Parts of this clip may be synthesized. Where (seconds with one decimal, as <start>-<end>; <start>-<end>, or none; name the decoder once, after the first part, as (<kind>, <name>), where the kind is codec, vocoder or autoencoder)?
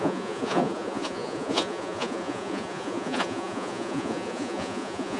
0.0-5.2 (vocoder, Vocos)